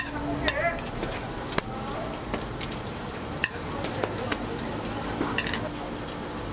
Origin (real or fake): real